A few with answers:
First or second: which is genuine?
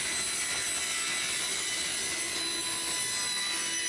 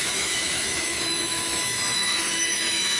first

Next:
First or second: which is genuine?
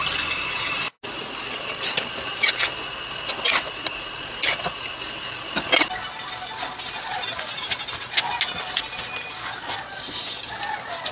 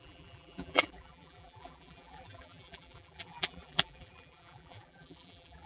first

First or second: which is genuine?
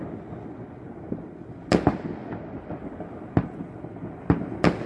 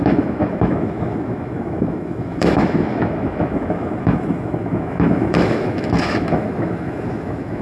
first